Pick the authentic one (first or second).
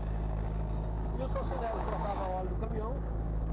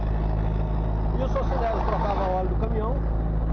second